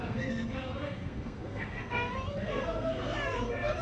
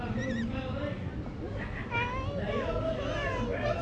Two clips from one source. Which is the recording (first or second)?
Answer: second